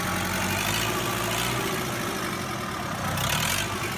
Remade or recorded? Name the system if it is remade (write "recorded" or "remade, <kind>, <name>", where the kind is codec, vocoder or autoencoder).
recorded